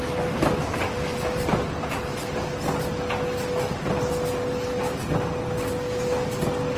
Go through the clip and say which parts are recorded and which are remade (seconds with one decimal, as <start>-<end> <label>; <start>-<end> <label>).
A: 0.0-6.8 recorded